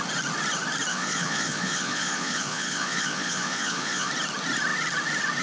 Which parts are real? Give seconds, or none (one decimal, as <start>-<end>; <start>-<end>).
0.0-0.9; 4.1-5.4